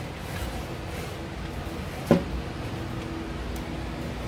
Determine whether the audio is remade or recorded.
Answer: recorded